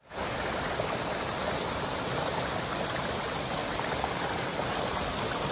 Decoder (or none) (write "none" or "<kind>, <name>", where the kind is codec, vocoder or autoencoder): none